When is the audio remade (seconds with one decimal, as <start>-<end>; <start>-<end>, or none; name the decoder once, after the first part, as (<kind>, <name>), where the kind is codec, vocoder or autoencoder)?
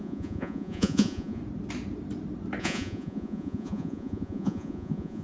0.0-1.4 (vocoder, Vocos); 2.6-5.2